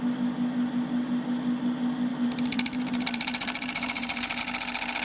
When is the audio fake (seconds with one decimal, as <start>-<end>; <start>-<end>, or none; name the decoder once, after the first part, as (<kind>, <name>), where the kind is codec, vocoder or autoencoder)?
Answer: 2.1-4.4 (vocoder, BigVGAN v2)